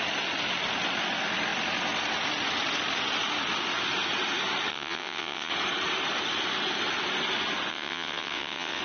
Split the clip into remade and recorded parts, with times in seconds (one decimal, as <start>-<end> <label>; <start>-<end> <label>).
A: 0.0-4.7 recorded; 4.7-5.5 remade; 5.5-7.7 recorded; 7.7-8.8 remade